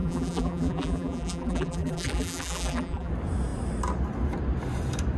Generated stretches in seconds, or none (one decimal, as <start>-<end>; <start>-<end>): 0.0-3.1